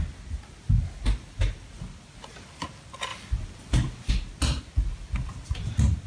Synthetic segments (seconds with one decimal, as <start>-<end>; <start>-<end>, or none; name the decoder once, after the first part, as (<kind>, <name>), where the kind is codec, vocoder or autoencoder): none